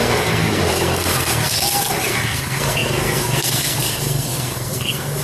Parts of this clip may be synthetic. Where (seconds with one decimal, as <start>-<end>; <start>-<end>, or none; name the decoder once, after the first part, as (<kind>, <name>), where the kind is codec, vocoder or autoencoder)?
0.0-5.2 (codec, SNAC)